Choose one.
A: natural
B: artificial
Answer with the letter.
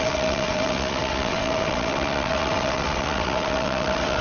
B